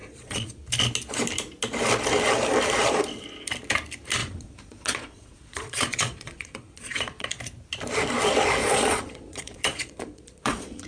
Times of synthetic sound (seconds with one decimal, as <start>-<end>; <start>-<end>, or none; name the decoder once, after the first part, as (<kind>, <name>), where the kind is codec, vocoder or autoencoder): 0.0-0.6 (vocoder, Vocos); 4.2-7.4; 8.6-10.9

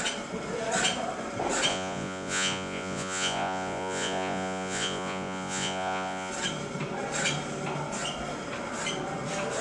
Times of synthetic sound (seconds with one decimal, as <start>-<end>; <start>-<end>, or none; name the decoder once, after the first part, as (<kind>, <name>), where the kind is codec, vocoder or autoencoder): 1.7-6.3 (vocoder, Vocos)

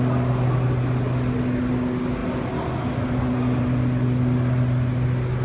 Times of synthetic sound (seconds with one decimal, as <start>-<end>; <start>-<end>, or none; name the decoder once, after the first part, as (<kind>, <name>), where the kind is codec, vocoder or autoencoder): none